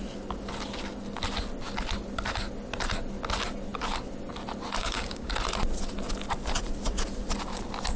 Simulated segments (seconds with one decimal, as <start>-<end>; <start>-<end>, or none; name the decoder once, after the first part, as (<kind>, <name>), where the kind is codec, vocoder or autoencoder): 4.8-5.3 (codec, DAC)